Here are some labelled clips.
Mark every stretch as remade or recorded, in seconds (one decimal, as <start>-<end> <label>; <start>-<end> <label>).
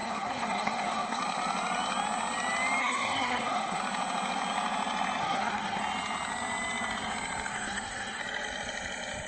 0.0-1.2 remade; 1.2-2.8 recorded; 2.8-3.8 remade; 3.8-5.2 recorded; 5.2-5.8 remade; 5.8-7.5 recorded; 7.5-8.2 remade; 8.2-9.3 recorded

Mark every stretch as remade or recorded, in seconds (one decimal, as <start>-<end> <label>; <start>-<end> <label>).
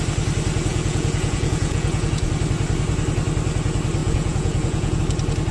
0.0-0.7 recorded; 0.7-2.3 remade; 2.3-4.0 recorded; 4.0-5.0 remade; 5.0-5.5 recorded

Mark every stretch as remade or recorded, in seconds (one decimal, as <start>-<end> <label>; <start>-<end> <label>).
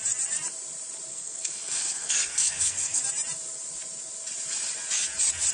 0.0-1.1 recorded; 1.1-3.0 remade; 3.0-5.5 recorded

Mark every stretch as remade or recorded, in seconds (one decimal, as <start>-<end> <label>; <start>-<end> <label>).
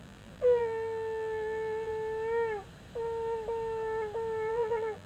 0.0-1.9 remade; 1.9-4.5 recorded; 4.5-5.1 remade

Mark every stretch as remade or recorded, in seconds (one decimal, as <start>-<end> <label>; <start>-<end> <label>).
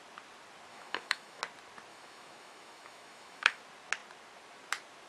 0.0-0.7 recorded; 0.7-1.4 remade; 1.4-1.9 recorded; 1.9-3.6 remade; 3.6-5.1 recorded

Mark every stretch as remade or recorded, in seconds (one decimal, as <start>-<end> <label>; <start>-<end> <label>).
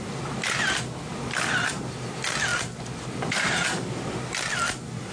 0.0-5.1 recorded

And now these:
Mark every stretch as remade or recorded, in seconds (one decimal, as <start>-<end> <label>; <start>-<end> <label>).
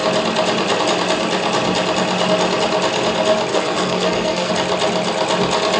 0.0-3.5 recorded; 3.5-4.5 remade; 4.5-5.8 recorded